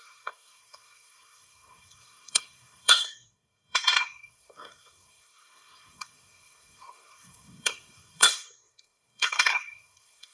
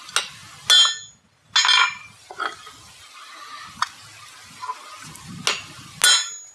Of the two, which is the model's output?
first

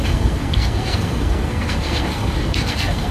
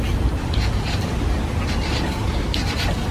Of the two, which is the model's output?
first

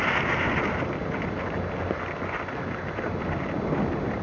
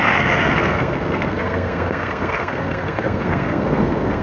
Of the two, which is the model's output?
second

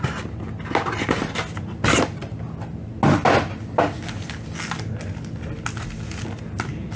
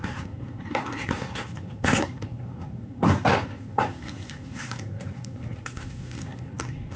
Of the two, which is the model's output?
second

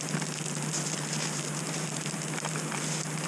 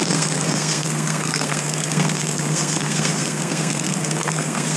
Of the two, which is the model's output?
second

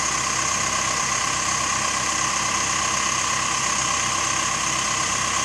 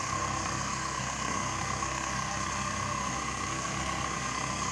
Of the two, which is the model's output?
second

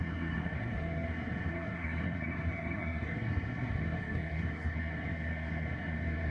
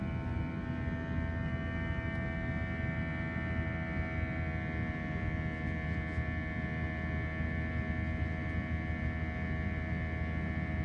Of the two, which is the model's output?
first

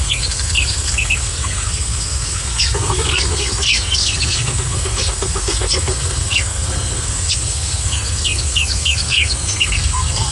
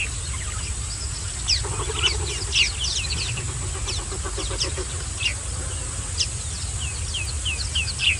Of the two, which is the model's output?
first